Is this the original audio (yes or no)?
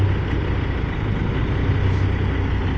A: yes